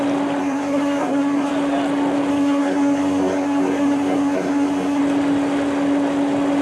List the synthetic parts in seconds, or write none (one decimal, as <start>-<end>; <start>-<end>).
0.4-1.5; 2.3-5.0